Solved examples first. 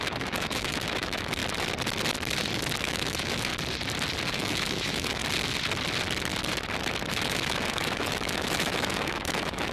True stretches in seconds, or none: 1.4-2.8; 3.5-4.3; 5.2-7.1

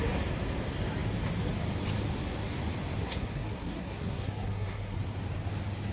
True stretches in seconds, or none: 0.0-3.0; 5.0-5.9

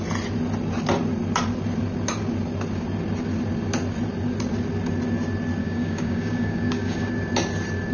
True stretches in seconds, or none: 0.0-5.6; 7.1-7.9

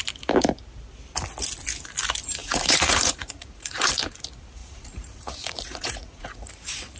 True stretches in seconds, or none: 0.0-2.4; 3.9-4.6; 6.5-7.0

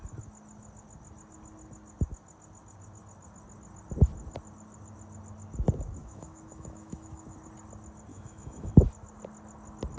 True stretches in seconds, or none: 0.0-6.0; 7.4-8.1; 8.7-10.0

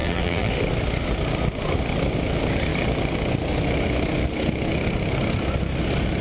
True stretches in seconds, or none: 0.5-6.2

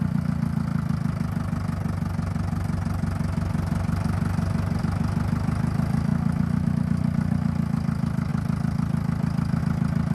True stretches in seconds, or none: 0.0-10.1

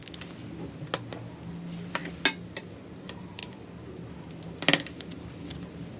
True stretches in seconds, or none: 0.0-6.0